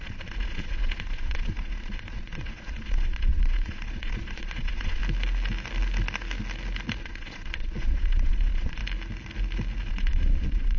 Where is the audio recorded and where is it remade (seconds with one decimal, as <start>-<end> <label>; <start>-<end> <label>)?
0.0-5.0 remade; 5.0-7.0 recorded; 7.0-8.8 remade; 8.8-9.9 recorded; 9.9-10.8 remade